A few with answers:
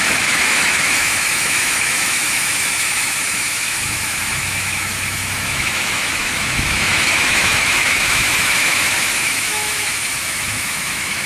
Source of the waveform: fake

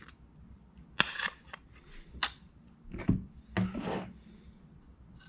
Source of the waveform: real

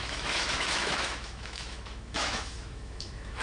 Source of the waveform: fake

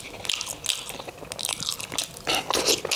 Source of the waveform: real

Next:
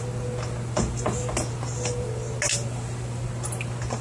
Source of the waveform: real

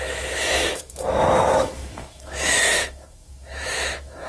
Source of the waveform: fake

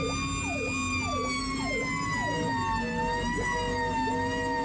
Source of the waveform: real